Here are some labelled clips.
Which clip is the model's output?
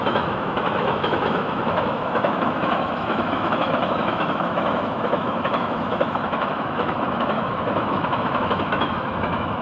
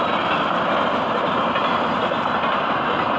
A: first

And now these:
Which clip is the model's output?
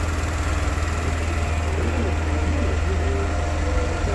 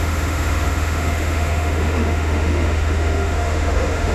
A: second